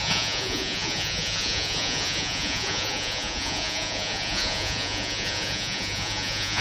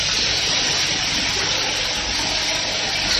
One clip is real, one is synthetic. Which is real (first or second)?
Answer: second